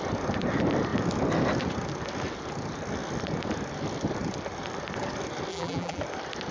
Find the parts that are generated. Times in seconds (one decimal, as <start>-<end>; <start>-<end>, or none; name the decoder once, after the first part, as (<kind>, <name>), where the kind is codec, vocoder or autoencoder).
5.5-6.0 (vocoder, BigVGAN v2)